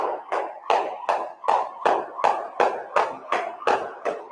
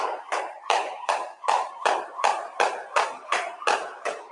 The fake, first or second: second